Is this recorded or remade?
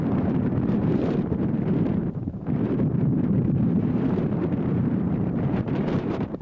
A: remade